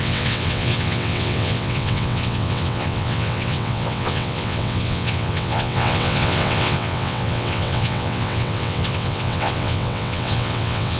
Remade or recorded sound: remade